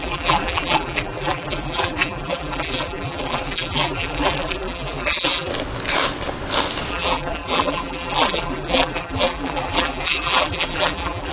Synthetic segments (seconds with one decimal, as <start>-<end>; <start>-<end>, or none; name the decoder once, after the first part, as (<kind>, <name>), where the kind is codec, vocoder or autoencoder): 0.0-5.5 (vocoder, BigVGAN v2); 6.9-11.3